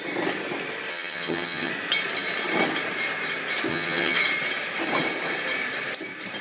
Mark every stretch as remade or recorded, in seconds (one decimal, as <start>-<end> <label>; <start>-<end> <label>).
0.0-0.9 recorded; 0.9-1.7 remade; 1.7-3.7 recorded; 3.7-4.2 remade; 4.2-6.4 recorded